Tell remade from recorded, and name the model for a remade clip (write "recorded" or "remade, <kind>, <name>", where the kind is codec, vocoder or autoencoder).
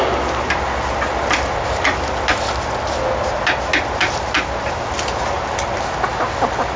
recorded